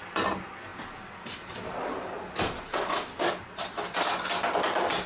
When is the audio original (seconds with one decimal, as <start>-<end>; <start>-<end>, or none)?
0.0-5.1